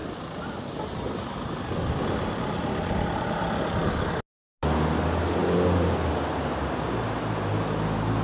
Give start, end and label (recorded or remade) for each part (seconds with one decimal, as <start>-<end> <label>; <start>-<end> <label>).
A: 0.0-8.2 recorded